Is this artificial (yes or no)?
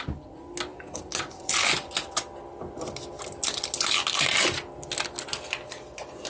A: no